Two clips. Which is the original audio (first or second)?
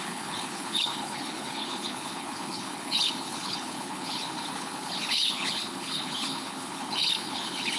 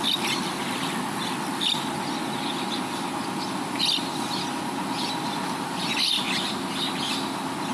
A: second